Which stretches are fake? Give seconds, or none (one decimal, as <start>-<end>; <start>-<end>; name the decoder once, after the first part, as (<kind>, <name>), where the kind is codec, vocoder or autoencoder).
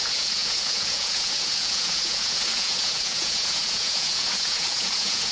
0.0-5.3 (vocoder, Vocos)